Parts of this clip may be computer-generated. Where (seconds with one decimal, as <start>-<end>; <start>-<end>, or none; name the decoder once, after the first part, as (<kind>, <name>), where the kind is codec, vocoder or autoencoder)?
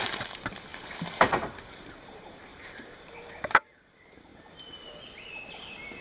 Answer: 0.0-4.3 (vocoder, BigVGAN v2)